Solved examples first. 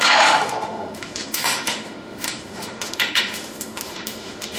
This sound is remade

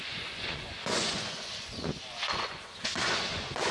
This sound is remade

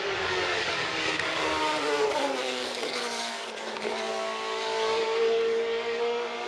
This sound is remade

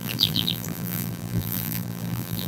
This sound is remade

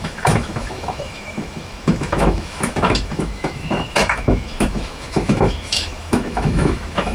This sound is remade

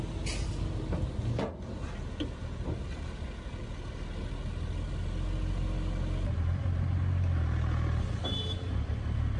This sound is recorded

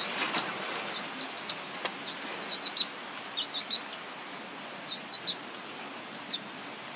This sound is recorded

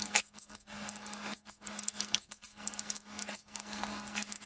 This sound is remade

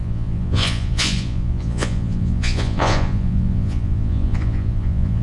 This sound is remade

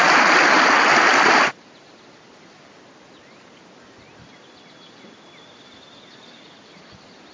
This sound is recorded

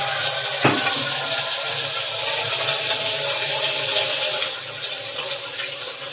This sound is recorded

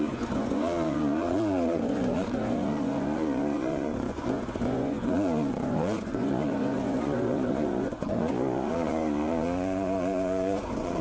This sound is remade